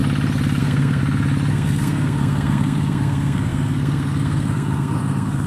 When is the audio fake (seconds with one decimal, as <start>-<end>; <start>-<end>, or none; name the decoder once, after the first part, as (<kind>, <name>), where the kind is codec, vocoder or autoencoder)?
0.6-1.0 (codec, SNAC); 1.5-5.5

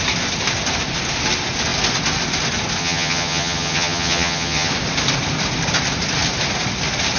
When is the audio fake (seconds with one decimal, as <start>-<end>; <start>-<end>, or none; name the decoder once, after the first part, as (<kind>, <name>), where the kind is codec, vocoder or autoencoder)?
2.8-4.7 (vocoder, HiFi-GAN)

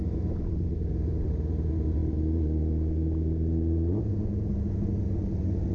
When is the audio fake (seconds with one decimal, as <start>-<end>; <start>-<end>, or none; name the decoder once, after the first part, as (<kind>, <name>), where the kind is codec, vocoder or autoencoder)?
none

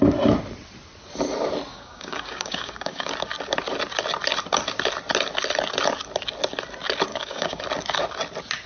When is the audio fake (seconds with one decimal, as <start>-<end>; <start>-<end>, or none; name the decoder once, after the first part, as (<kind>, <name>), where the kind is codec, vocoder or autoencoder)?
1.7-3.1 (codec, DAC); 7.1-7.6

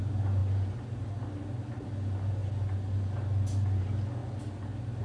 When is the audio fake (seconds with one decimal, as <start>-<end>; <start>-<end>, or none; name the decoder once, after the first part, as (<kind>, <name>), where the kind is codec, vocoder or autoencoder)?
none